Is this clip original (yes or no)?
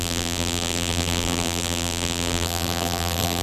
no